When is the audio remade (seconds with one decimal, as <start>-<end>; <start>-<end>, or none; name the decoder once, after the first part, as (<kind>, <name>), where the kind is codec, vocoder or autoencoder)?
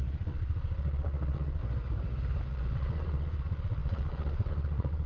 0.0-1.6 (vocoder, Vocos); 2.5-5.1